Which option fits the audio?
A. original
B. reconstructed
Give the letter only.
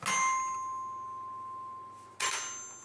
A